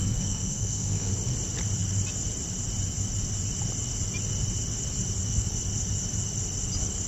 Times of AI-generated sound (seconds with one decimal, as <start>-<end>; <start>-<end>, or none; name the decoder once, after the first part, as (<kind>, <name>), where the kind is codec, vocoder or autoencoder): 0.0-1.1 (codec, SNAC)